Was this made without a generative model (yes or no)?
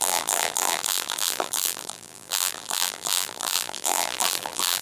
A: no